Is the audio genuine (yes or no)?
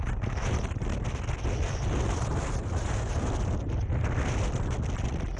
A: yes